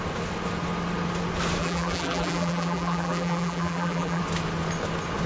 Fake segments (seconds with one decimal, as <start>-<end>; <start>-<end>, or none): 1.6-4.2

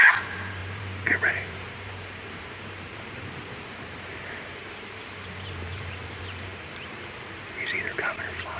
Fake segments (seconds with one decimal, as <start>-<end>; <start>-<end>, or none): 0.0-8.6